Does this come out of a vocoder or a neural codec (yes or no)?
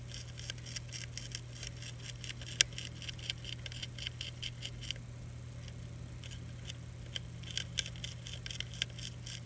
no